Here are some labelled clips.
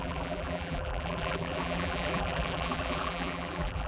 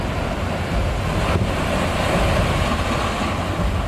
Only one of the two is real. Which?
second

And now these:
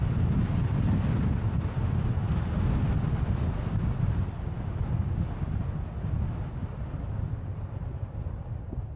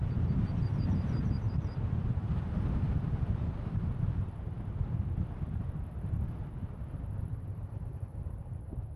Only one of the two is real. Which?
first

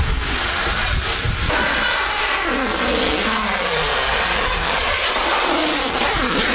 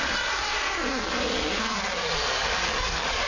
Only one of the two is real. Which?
first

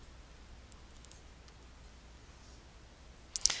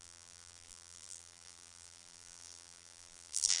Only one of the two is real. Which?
first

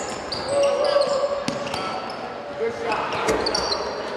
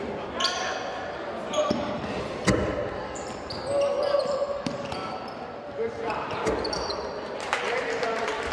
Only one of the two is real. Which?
first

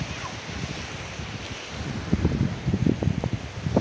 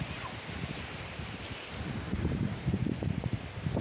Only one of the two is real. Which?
first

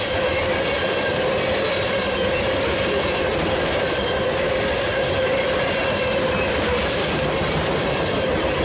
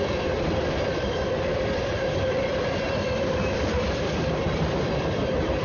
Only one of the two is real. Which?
first